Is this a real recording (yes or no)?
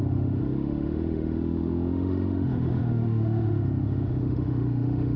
no